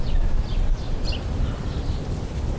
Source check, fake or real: fake